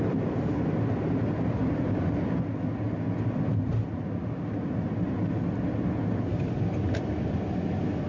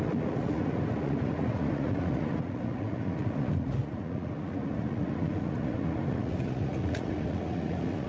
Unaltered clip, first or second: first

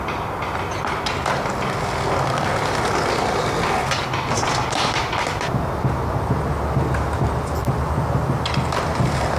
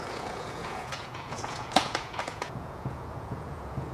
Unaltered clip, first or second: first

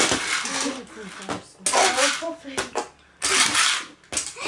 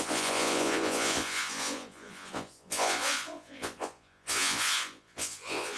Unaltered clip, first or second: first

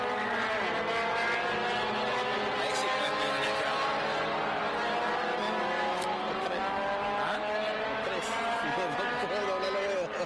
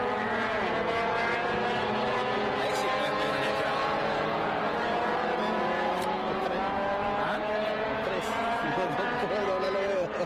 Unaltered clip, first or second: first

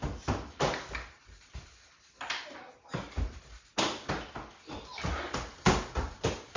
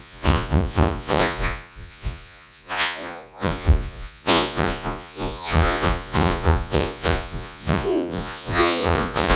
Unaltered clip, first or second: first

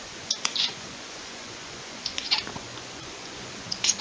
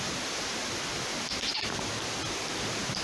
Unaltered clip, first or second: second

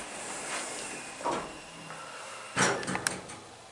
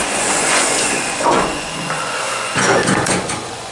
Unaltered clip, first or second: first